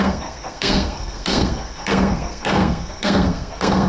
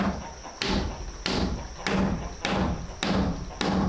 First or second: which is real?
second